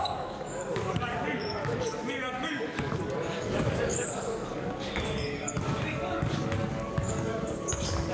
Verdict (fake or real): fake